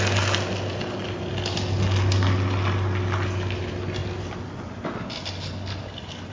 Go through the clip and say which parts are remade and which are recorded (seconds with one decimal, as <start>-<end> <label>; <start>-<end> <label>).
0.0-6.3 recorded